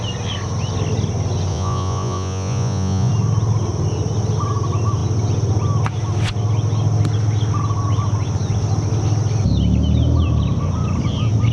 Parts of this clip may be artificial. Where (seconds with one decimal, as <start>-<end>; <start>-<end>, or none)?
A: 1.5-3.1